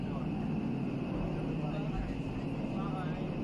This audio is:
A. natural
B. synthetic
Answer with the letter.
A